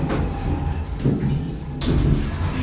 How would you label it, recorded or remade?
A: recorded